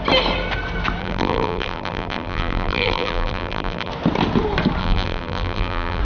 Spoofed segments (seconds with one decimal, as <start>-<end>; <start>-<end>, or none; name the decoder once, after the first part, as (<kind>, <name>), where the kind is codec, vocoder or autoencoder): 1.0-3.9 (vocoder, BigVGAN v2); 4.8-6.0